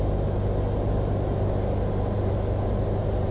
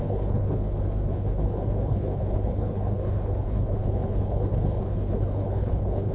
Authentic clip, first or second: first